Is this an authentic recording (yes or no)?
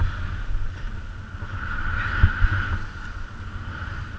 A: yes